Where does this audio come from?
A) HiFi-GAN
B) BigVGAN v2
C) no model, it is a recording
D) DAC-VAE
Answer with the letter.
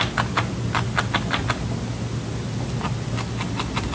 C